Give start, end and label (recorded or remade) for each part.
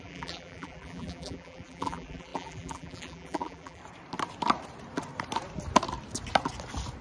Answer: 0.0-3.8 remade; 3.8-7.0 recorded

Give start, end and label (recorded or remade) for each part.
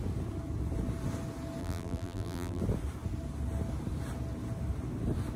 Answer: 0.0-1.6 recorded; 1.6-2.6 remade; 2.6-5.4 recorded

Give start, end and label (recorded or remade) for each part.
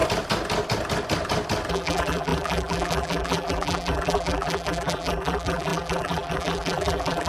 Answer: 0.0-1.7 recorded; 1.7-7.3 remade